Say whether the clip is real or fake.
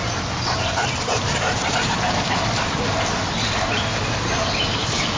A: fake